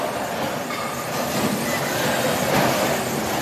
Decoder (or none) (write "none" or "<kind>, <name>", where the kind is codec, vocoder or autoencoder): none